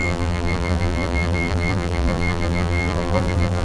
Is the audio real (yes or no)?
no